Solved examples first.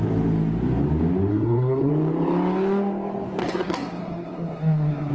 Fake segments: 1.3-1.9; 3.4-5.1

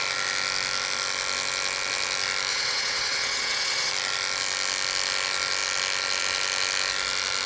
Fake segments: 2.5-3.9